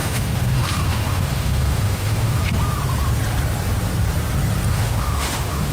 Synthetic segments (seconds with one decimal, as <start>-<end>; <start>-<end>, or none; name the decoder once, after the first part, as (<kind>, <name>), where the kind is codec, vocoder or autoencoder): 0.0-2.4 (autoencoder, DAC-VAE); 4.7-5.7